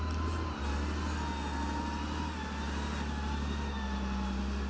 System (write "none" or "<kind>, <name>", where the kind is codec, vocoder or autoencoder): none